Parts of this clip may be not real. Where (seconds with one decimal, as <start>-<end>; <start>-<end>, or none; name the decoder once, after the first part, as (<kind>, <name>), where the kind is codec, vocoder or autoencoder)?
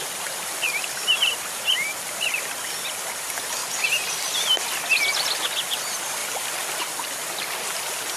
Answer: none